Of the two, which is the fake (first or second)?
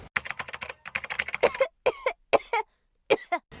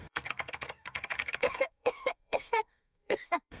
second